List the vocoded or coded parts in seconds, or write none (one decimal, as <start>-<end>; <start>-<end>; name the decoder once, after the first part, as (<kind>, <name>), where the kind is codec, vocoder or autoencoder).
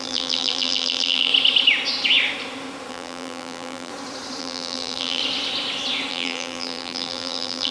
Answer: 0.0-1.3 (vocoder, BigVGAN v2); 2.9-3.9; 4.4-5.2; 6.1-7.7